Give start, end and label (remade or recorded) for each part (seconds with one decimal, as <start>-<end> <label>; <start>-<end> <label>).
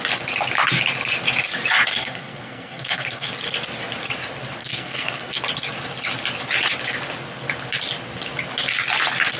0.0-1.9 recorded; 1.9-3.3 remade; 3.3-4.6 recorded; 4.6-5.4 remade; 5.4-9.4 recorded